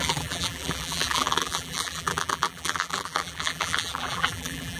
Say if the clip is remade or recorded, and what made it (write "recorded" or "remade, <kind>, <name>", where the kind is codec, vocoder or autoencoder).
remade, vocoder, BigVGAN v2